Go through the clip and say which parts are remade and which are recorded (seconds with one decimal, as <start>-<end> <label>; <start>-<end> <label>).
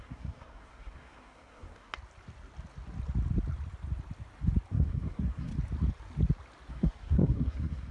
0.0-1.9 remade; 1.9-4.7 recorded; 4.7-5.5 remade; 5.5-6.7 recorded; 6.7-7.9 remade